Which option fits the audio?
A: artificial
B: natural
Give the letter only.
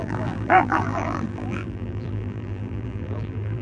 A